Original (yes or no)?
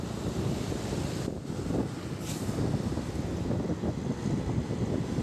yes